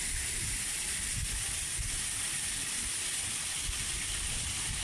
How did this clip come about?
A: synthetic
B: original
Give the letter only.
B